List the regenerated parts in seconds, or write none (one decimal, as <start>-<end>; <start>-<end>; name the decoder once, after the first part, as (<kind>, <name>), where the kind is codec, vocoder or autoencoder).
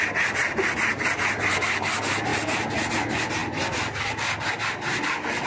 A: none